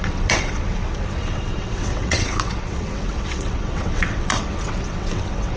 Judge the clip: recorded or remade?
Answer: remade